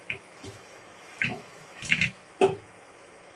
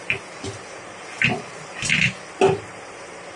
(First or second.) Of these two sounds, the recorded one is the second